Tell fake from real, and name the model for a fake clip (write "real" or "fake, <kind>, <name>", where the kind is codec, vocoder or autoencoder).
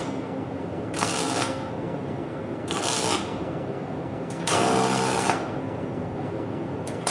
fake, codec, SNAC